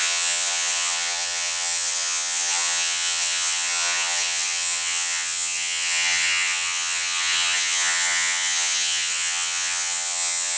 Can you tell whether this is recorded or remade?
remade